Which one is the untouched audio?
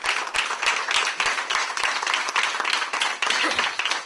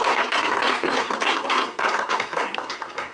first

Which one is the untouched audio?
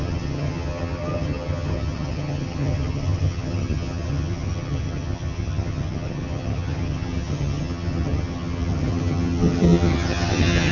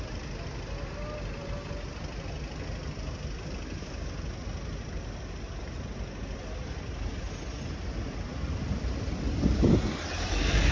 second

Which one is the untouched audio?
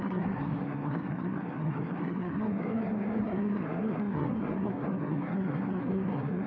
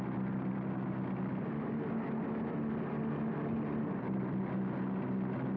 second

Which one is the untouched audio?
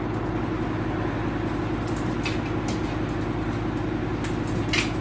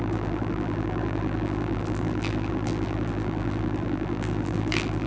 first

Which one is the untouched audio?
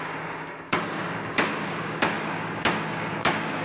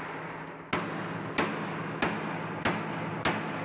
second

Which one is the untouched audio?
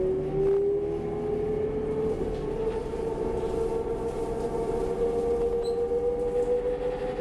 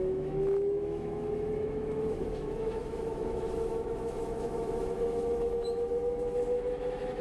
first